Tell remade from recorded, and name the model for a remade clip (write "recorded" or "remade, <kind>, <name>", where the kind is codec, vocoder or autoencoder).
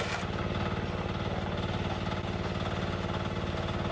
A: recorded